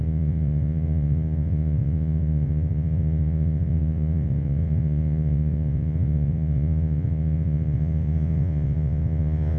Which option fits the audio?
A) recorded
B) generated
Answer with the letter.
B